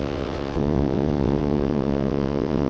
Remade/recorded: remade